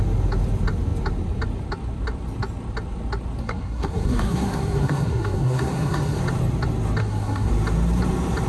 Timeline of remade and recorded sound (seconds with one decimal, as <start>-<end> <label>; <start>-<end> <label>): 0.0-3.4 recorded; 3.4-6.2 remade; 6.2-7.0 recorded; 7.0-7.5 remade; 7.5-8.5 recorded